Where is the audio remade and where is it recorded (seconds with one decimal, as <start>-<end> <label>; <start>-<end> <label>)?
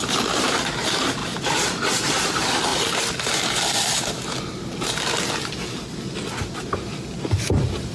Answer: 0.0-2.7 remade; 2.7-7.2 recorded; 7.2-7.9 remade